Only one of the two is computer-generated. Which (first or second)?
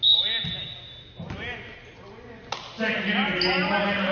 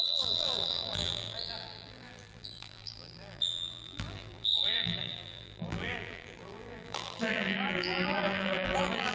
second